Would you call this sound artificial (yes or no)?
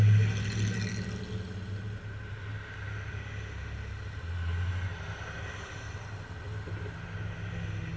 no